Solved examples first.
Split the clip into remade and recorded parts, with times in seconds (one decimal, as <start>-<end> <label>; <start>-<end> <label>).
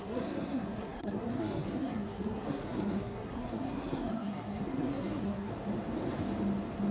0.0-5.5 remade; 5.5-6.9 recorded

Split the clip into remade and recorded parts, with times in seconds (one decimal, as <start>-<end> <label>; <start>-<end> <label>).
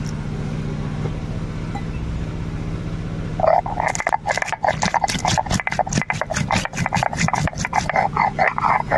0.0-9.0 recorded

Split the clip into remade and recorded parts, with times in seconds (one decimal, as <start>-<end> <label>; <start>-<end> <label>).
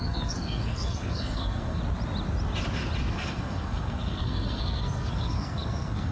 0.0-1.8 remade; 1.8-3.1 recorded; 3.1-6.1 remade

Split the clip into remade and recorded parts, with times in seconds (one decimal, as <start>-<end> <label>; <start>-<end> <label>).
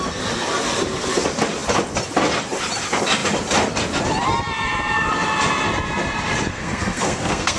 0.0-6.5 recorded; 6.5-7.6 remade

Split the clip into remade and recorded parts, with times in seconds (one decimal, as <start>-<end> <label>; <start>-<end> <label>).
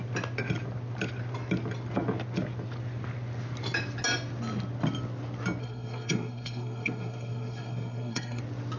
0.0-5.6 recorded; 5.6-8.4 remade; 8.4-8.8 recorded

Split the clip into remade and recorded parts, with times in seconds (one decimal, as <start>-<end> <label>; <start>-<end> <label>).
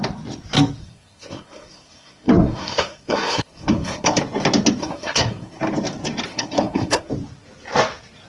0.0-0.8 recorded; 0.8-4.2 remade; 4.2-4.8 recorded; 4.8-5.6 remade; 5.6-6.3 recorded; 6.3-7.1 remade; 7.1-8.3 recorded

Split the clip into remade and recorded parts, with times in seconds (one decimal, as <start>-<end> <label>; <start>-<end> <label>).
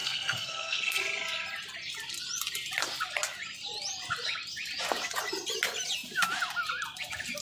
0.0-1.0 remade; 1.0-7.4 recorded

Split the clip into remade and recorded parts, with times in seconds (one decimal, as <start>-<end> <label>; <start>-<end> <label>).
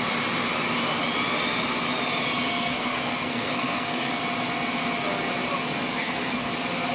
0.0-2.5 recorded; 2.5-4.2 remade; 4.2-6.0 recorded; 6.0-6.5 remade; 6.5-6.9 recorded